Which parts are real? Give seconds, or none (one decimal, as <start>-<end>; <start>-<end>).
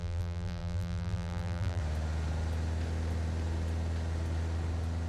1.8-5.1